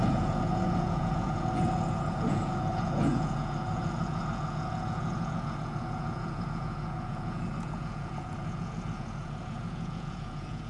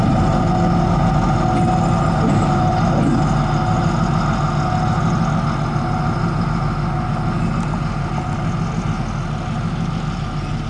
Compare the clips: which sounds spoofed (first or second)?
first